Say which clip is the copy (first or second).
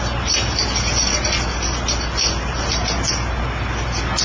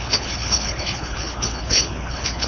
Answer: second